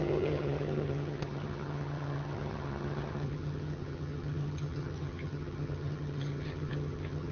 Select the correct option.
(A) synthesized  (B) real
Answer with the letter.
A